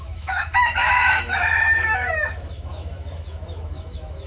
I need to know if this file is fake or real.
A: fake